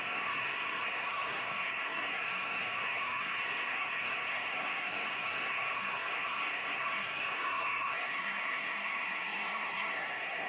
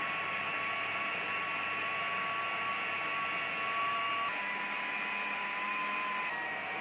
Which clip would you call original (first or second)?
second